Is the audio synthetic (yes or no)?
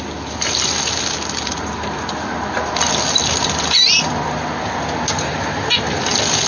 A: no